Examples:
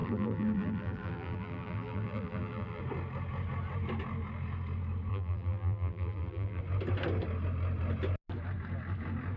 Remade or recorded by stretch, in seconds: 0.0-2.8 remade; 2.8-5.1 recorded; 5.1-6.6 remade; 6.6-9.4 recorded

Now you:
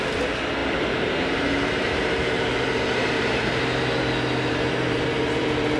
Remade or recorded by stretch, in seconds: 0.0-0.6 recorded; 0.6-3.6 remade; 3.6-4.5 recorded; 4.5-5.8 remade

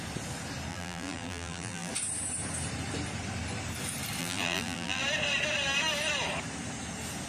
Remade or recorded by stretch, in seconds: 0.0-0.7 recorded; 0.7-1.9 remade; 1.9-4.2 recorded; 4.2-5.0 remade; 5.0-7.3 recorded

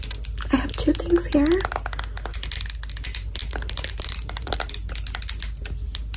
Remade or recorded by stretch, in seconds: 0.0-3.4 recorded; 3.4-4.5 remade; 4.5-6.2 recorded

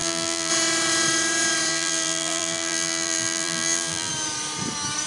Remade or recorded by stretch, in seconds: 0.0-0.5 remade; 0.5-1.7 recorded; 1.7-4.1 remade; 4.1-5.1 recorded